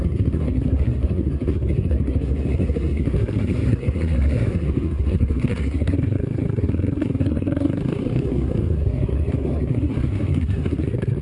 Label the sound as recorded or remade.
remade